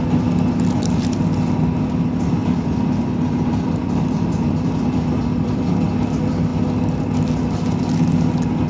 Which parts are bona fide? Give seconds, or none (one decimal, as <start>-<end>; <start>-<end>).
0.0-2.4; 5.7-8.7